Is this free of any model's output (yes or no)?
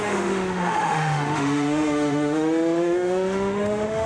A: no